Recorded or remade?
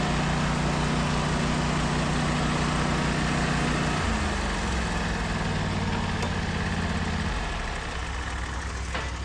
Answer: recorded